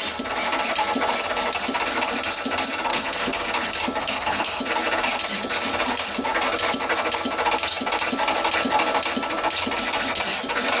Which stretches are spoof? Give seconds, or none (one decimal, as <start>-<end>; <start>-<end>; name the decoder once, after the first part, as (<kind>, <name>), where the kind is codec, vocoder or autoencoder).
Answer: 2.9-3.5 (codec, SNAC); 4.0-4.6